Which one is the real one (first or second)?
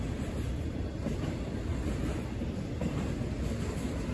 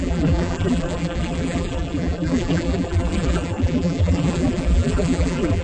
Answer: first